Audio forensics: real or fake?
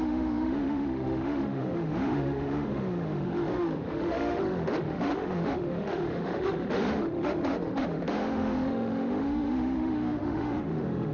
fake